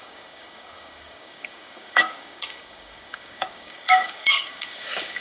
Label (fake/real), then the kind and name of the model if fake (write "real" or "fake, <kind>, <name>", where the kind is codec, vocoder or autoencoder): fake, codec, DAC